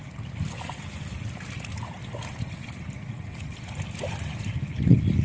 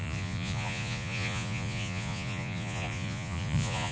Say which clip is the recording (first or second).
first